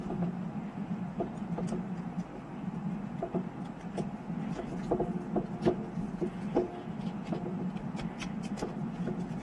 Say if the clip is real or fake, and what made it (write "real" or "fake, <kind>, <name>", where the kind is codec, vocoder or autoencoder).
real